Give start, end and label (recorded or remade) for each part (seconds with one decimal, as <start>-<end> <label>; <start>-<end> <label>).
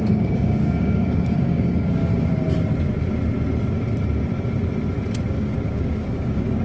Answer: 0.0-2.0 remade; 2.0-5.3 recorded; 5.3-6.6 remade